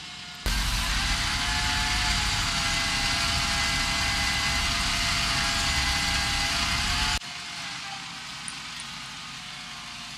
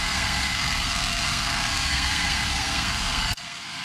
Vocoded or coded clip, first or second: second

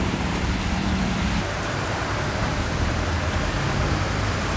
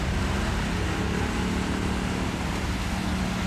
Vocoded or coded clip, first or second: first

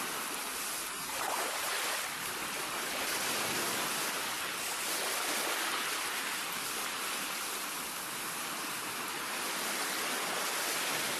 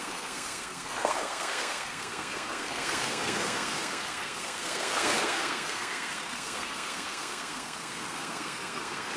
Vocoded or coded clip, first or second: second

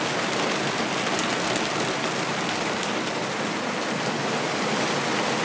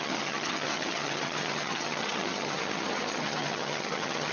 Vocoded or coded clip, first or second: second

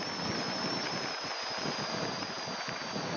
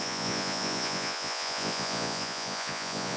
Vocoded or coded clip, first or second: second